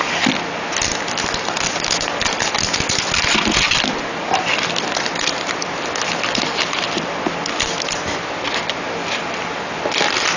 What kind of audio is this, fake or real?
real